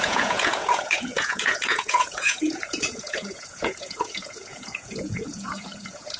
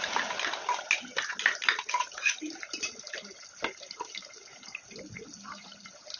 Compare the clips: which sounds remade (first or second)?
first